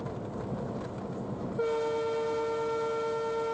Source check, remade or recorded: recorded